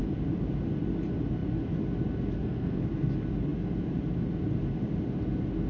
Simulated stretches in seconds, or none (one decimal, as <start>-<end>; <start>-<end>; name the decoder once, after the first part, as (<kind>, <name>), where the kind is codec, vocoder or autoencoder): 2.4-3.1 (codec, SNAC)